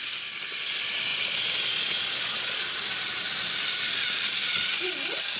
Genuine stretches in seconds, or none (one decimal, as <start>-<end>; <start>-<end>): 0.0-5.4